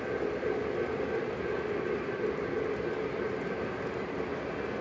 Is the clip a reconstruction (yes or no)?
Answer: no